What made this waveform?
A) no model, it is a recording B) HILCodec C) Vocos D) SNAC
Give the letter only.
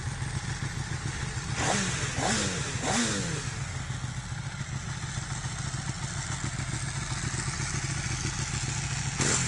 A